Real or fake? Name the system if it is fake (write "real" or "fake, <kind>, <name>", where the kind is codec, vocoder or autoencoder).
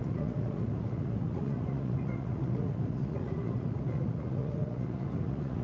fake, vocoder, Vocos